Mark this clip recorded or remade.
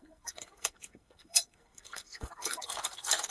remade